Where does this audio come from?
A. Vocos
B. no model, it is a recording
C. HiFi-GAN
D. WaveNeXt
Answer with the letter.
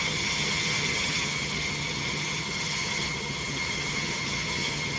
C